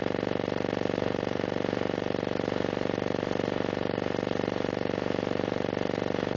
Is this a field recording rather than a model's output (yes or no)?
no